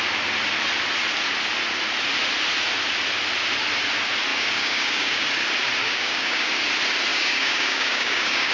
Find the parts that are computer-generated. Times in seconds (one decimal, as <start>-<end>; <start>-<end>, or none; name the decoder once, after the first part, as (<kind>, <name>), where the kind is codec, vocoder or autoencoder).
4.3-5.3 (codec, DAC); 5.8-6.5; 7.1-8.5